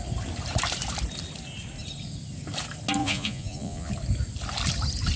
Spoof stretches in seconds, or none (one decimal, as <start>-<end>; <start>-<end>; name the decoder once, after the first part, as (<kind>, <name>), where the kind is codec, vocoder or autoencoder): 3.0-3.9 (vocoder, Vocos)